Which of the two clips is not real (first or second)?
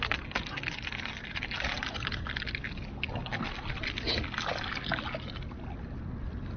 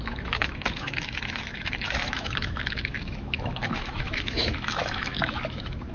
second